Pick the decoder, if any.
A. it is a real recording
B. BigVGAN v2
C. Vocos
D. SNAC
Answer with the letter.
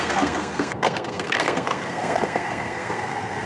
D